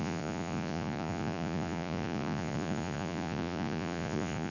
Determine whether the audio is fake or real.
fake